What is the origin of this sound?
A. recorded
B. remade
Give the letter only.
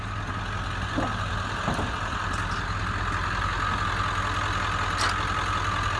A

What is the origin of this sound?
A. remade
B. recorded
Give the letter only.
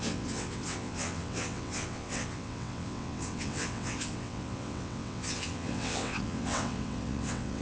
A